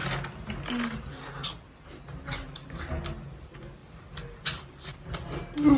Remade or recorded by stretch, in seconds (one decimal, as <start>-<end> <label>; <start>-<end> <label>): 0.0-3.8 recorded; 3.8-5.8 remade